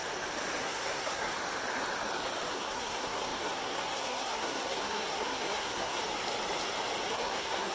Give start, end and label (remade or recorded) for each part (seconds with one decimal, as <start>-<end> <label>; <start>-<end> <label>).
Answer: 0.0-0.6 recorded; 0.6-1.3 remade; 1.3-2.5 recorded; 2.5-6.0 remade; 6.0-7.1 recorded; 7.1-7.7 remade